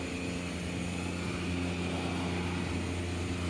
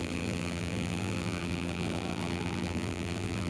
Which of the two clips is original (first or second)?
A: first